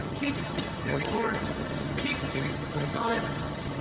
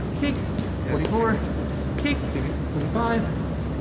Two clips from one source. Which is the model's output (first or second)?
first